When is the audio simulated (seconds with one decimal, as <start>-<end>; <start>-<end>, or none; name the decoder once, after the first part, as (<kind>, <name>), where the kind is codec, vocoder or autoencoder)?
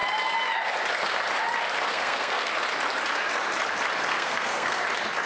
1.9-2.5 (codec, SNAC); 4.1-4.8